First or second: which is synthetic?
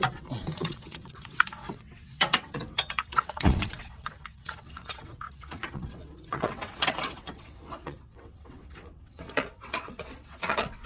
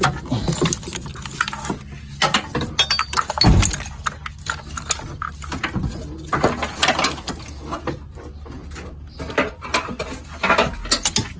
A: first